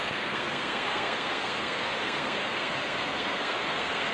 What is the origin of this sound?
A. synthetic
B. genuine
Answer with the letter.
A